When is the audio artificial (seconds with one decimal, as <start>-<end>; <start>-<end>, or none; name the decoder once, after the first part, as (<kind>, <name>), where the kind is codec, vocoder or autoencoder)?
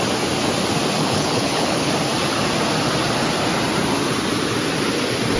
1.0-1.9 (codec, HILCodec)